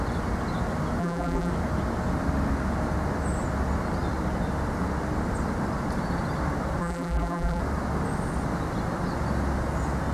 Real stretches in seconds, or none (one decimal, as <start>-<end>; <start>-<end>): 0.0-1.0; 1.5-6.8; 7.6-10.1